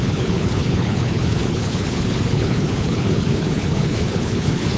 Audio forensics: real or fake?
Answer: fake